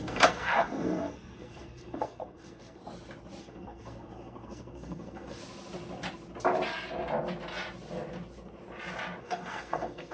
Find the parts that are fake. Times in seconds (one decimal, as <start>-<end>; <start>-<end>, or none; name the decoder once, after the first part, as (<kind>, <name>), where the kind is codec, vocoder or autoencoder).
0.0-2.8 (codec, SNAC); 3.4-5.4; 9.2-10.1